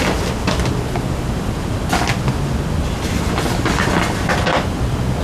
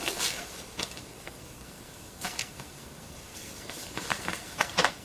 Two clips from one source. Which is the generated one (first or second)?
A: second